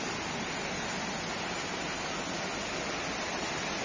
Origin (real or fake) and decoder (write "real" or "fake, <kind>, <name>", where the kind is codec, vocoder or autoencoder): real